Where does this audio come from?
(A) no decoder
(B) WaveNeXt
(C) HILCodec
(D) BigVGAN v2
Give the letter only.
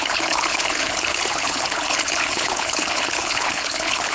C